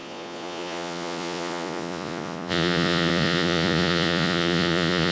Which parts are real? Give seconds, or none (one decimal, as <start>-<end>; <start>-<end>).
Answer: none